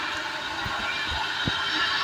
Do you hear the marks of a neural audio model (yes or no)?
no